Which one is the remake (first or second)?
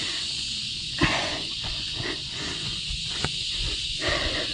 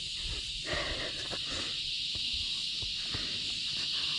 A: first